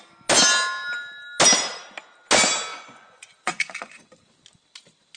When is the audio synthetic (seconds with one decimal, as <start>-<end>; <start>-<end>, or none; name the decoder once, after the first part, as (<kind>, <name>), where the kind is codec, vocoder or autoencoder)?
2.7-4.1 (vocoder, Vocos)